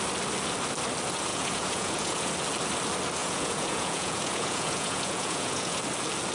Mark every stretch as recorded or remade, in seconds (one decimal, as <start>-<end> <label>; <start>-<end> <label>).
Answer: 0.0-1.3 recorded; 1.3-2.3 remade; 2.3-3.2 recorded; 3.2-5.8 remade; 5.8-6.3 recorded